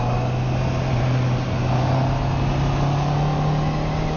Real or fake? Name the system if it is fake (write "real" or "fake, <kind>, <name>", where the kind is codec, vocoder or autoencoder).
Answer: real